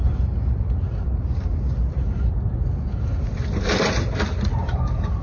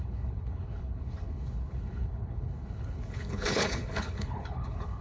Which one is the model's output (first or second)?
second